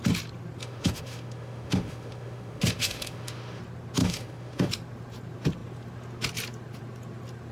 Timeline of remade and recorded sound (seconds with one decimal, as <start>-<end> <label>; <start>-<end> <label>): 0.0-0.6 recorded; 0.6-3.6 remade; 3.6-4.0 recorded; 4.0-4.7 remade; 4.7-7.5 recorded

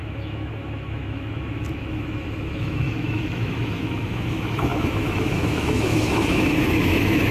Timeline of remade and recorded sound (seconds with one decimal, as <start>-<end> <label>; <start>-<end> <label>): 0.0-7.3 remade

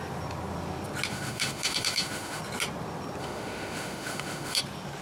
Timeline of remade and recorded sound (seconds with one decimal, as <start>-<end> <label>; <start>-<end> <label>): 0.0-1.1 recorded; 1.1-2.4 remade; 2.4-3.2 recorded; 3.2-4.6 remade; 4.6-5.0 recorded

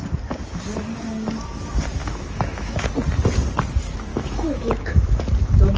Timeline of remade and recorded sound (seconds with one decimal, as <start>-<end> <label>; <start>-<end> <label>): 0.0-2.0 recorded; 2.0-2.9 remade; 2.9-4.1 recorded; 4.1-5.3 remade; 5.3-5.8 recorded

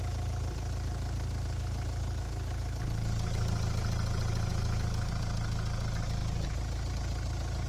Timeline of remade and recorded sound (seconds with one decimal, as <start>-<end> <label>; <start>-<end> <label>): 0.0-4.5 recorded; 4.5-5.1 remade; 5.1-7.7 recorded

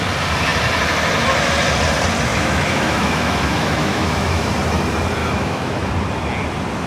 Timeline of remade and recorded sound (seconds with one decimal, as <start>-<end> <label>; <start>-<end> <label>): 0.0-2.3 recorded; 2.3-4.5 remade; 4.5-5.2 recorded; 5.2-5.9 remade; 5.9-6.9 recorded